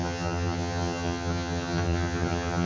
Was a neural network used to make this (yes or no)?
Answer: yes